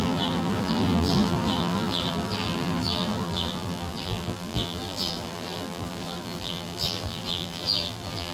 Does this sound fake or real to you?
fake